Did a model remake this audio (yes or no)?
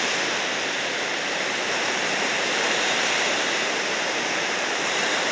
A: yes